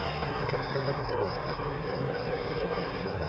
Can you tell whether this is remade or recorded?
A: remade